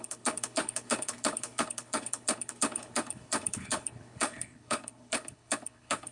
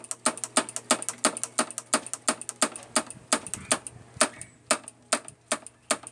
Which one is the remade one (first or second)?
first